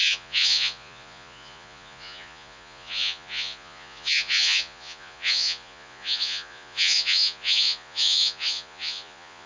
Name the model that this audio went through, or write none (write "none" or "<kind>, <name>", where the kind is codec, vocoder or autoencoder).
vocoder, Vocos